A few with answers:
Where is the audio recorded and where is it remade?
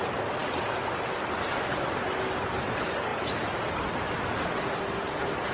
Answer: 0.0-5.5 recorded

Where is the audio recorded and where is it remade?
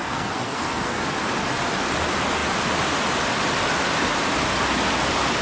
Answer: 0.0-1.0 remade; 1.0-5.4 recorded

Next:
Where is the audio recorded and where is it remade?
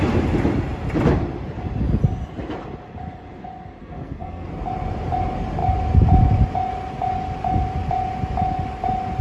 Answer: 0.0-3.8 recorded; 3.8-4.5 remade; 4.5-9.2 recorded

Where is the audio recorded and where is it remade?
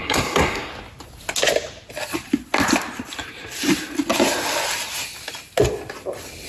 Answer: 0.0-0.7 remade; 0.7-6.5 recorded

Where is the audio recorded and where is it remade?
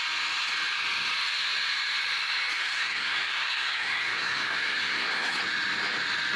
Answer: 0.0-2.6 recorded; 2.6-5.4 remade; 5.4-6.4 recorded